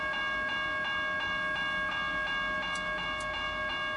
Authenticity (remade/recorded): recorded